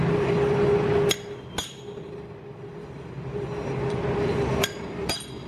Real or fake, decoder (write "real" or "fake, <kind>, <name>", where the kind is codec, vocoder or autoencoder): real